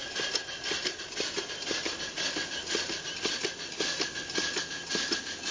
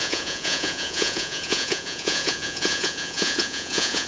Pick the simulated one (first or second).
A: second